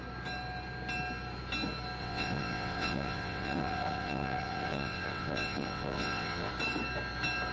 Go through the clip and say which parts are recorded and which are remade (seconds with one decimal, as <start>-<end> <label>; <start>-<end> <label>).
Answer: 0.0-2.0 recorded; 2.0-6.5 remade; 6.5-7.5 recorded